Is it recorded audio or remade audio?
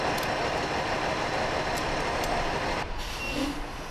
recorded